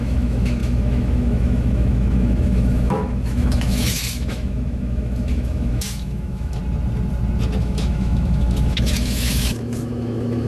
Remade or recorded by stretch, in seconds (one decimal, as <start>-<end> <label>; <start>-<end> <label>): 0.0-6.6 remade; 6.6-7.6 recorded; 7.6-10.5 remade